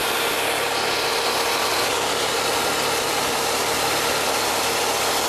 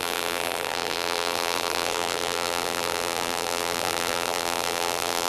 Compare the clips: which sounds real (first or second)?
first